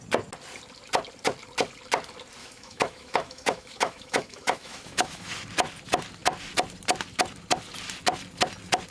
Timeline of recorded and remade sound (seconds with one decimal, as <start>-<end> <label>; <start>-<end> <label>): 0.0-2.4 recorded; 2.4-5.3 remade; 5.3-8.9 recorded